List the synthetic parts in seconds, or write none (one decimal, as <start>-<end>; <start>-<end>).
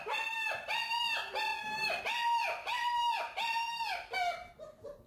none